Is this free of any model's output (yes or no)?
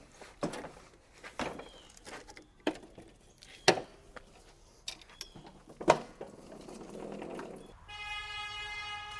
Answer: yes